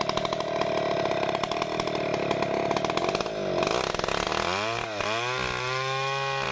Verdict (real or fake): real